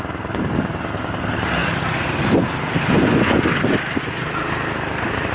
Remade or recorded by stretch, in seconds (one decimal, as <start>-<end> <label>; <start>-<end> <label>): 0.0-5.3 recorded

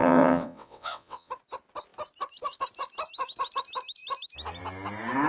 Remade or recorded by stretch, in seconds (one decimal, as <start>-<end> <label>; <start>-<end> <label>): 0.0-1.3 remade; 1.3-5.3 recorded

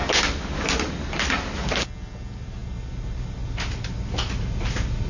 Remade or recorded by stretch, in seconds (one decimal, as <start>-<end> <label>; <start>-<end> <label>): 0.0-5.1 recorded

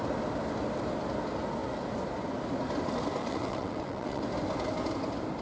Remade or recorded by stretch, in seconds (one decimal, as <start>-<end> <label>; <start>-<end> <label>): 0.0-3.2 recorded; 3.2-4.2 remade; 4.2-5.4 recorded

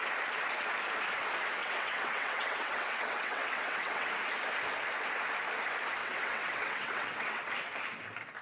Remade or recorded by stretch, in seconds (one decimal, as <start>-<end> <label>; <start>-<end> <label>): 0.0-1.6 recorded; 1.6-4.1 remade; 4.1-6.0 recorded; 6.0-7.5 remade; 7.5-8.4 recorded

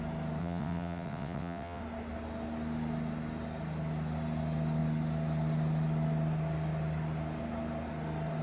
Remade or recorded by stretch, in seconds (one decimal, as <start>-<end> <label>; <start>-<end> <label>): 0.0-0.4 recorded; 0.4-1.8 remade; 1.8-8.4 recorded

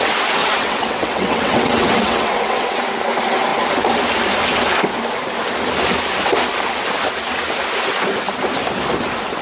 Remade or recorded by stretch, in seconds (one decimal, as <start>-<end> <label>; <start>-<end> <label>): 0.0-0.4 recorded; 0.4-2.8 remade; 2.8-9.4 recorded

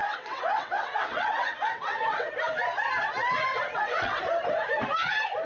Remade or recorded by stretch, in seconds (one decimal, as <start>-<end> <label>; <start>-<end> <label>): 0.0-2.3 remade; 2.3-3.5 recorded; 3.5-4.2 remade; 4.2-5.5 recorded